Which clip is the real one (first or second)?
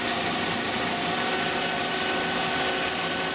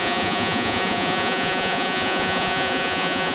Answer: first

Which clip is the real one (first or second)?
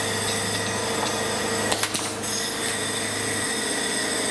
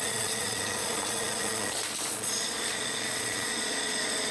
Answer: first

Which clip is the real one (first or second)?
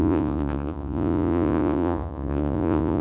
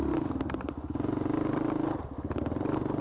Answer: second